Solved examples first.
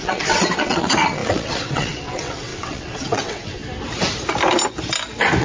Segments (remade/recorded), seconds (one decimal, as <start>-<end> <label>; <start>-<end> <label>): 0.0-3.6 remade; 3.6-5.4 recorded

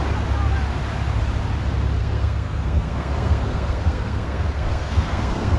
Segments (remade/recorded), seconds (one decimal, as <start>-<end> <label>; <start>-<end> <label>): 0.0-2.0 recorded; 2.0-5.6 remade

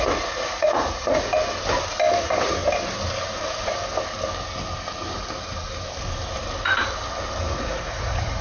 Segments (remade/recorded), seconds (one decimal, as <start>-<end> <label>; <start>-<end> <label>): 0.0-1.3 remade; 1.3-2.2 recorded; 2.2-2.6 remade; 2.6-7.4 recorded; 7.4-8.4 remade